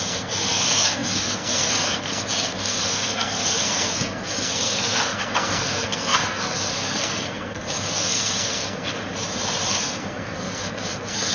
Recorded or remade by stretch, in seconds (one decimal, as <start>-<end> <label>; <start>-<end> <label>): 0.0-9.0 remade; 9.0-9.7 recorded; 9.7-11.3 remade